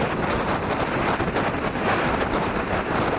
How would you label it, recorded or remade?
recorded